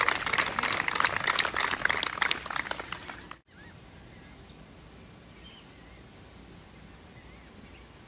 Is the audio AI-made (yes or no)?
no